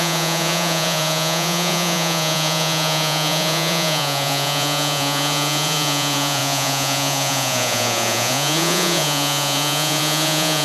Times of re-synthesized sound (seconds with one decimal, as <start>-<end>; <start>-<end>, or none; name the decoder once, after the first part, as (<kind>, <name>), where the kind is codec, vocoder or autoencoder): 0.0-10.6 (vocoder, Vocos)